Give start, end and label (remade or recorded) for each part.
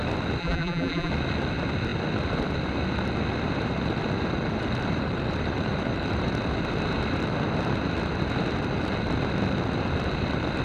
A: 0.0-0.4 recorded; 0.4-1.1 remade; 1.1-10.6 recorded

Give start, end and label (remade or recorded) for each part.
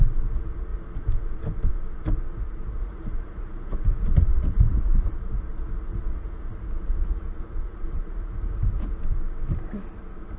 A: 0.0-2.8 recorded; 2.8-5.1 remade; 5.1-5.9 recorded; 5.9-9.0 remade; 9.0-10.4 recorded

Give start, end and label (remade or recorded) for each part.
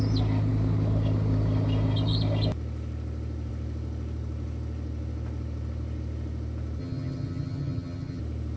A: 0.0-6.8 recorded; 6.8-8.2 remade; 8.2-8.6 recorded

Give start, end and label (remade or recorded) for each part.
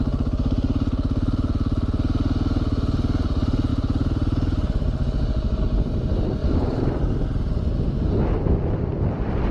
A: 0.0-6.4 recorded; 6.4-7.0 remade; 7.0-9.5 recorded